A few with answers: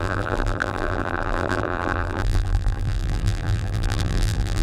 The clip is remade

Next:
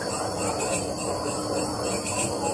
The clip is remade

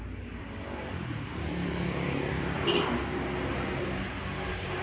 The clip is remade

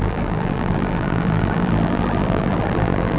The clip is remade